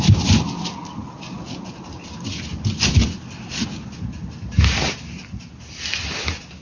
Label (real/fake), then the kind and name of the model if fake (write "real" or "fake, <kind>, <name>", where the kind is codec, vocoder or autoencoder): real